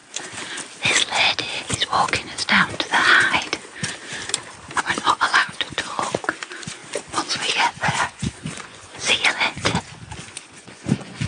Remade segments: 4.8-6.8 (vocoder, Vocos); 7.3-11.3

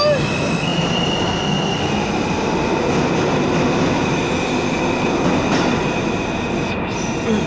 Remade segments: none

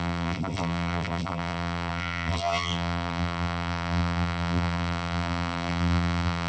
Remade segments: 0.0-6.5 (vocoder, BigVGAN v2)

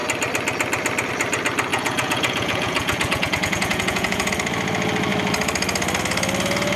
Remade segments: 1.7-4.3 (vocoder, Vocos)